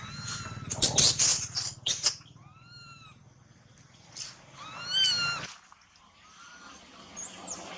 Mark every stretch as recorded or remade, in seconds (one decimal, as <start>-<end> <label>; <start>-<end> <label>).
0.0-7.8 recorded